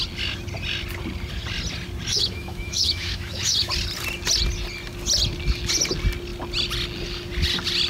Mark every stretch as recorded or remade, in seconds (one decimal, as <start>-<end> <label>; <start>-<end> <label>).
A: 0.0-2.1 recorded; 2.1-3.7 remade; 3.7-7.9 recorded